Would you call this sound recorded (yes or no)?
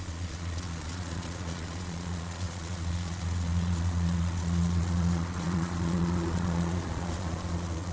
no